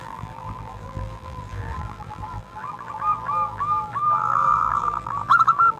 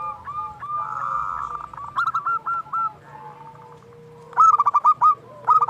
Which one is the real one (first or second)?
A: second